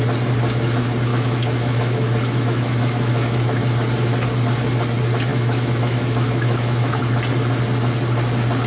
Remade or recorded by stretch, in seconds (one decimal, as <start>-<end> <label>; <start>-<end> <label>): 0.0-1.1 recorded; 1.1-3.6 remade; 3.6-5.3 recorded; 5.3-7.0 remade; 7.0-8.7 recorded